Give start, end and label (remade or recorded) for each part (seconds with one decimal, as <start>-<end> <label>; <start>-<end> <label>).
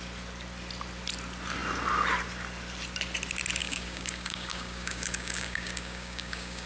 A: 0.0-3.6 recorded; 3.6-6.7 remade